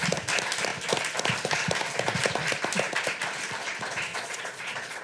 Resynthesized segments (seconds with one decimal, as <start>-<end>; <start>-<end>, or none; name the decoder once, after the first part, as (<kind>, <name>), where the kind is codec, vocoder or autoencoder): 4.1-5.0 (vocoder, Vocos)